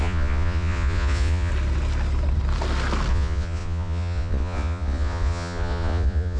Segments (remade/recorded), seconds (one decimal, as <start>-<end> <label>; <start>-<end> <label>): 0.0-1.5 remade; 1.5-3.1 recorded; 3.1-6.4 remade